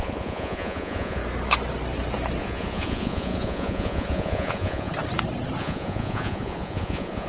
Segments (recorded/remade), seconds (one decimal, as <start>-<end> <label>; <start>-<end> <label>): 0.0-1.2 remade; 1.2-2.4 recorded; 2.4-4.9 remade; 4.9-5.6 recorded; 5.6-7.3 remade